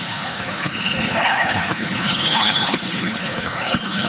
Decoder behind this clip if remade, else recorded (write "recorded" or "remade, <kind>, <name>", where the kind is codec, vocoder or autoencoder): remade, codec, HILCodec